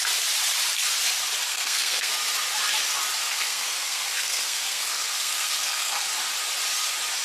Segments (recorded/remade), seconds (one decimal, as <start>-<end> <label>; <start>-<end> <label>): 0.0-1.5 recorded; 1.5-2.1 remade; 2.1-3.2 recorded; 3.2-6.1 remade; 6.1-7.2 recorded